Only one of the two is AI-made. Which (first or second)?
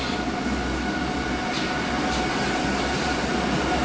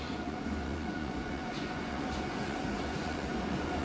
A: second